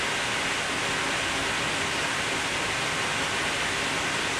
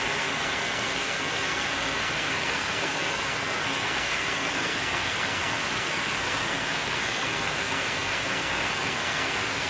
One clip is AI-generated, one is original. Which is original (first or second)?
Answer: first